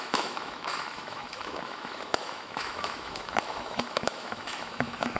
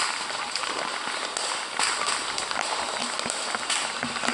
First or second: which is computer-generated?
first